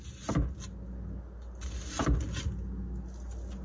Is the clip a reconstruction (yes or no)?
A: no